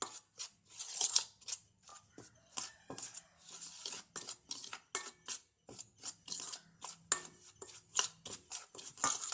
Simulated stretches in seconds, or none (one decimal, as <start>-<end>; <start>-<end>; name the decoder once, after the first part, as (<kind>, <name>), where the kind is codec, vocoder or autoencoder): none